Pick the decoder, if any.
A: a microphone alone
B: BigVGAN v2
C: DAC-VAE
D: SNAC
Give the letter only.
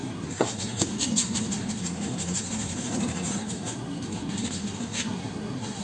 D